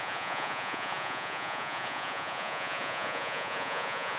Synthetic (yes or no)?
yes